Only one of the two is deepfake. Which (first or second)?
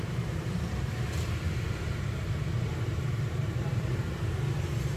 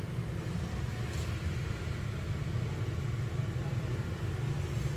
first